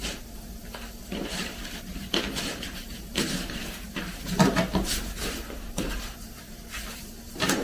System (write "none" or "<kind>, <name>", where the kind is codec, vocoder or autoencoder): vocoder, BigVGAN v2